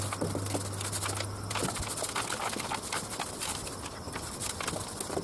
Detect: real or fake real